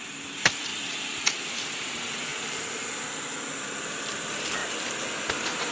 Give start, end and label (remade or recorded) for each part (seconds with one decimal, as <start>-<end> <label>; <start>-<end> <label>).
0.0-0.7 remade; 0.7-1.6 recorded; 1.6-2.3 remade; 2.3-3.5 recorded; 3.5-4.6 remade; 4.6-5.3 recorded; 5.3-5.7 remade